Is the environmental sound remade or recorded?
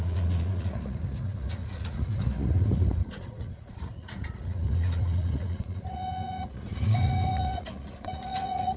remade